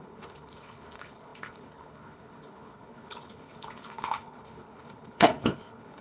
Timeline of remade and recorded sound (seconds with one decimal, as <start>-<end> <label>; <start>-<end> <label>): 0.0-6.0 remade